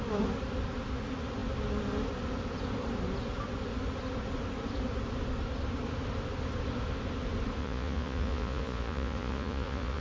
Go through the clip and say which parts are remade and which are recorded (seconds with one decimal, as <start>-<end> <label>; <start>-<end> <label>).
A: 0.0-7.6 recorded; 7.6-10.0 remade